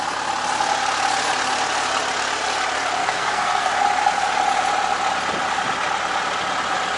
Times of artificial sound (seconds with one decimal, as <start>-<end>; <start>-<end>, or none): 3.0-3.7